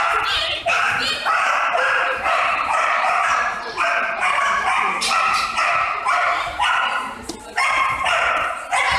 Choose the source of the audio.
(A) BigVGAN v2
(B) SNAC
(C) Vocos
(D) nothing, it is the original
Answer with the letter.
A